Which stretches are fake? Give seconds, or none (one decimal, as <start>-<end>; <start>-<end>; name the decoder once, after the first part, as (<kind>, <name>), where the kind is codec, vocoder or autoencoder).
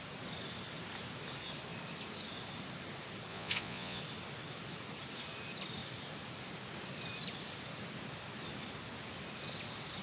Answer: 3.3-4.0 (vocoder, Vocos)